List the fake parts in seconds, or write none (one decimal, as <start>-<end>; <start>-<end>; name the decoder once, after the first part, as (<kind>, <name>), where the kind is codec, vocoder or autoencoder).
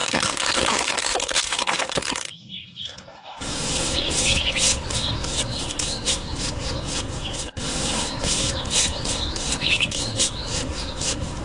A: 0.0-11.4 (codec, SNAC)